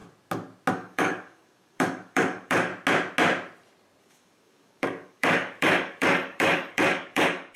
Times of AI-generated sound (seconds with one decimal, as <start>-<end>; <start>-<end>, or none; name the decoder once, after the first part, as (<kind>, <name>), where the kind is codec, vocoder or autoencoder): 0.7-2.7 (codec, DAC); 4.0-7.6